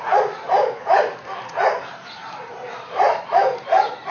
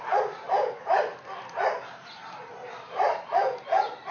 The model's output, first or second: first